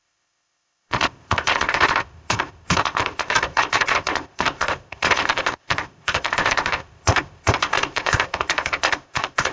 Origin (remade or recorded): remade